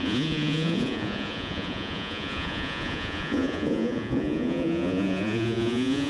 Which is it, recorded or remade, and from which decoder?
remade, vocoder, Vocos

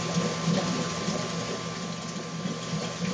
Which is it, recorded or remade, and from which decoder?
recorded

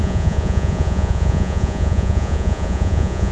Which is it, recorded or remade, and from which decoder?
remade, vocoder, Vocos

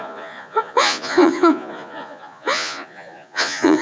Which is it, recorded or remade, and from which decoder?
remade, vocoder, Vocos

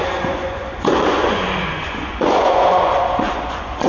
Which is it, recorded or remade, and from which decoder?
remade, vocoder, Vocos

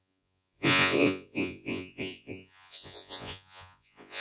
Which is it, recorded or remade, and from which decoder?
remade, vocoder, Vocos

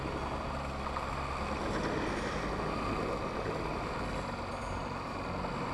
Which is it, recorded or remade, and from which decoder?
recorded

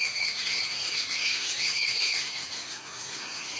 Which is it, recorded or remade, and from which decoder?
remade, codec, SNAC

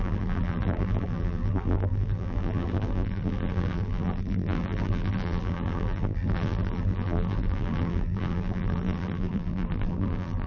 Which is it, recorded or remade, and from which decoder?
remade, vocoder, BigVGAN v2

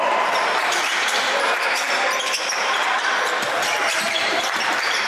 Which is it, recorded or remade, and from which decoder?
remade, vocoder, BigVGAN v2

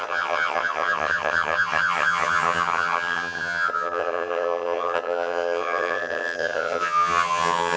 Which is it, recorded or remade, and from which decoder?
remade, vocoder, HiFi-GAN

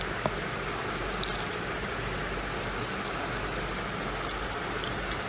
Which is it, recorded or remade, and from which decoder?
recorded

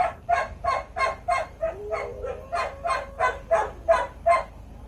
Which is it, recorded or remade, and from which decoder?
recorded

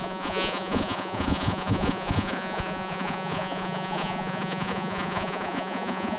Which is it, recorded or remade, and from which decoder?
remade, vocoder, Vocos